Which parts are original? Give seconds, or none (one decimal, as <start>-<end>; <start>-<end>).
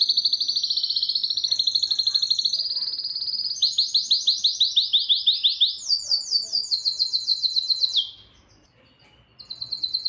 0.0-1.2; 2.4-7.3; 8.8-10.1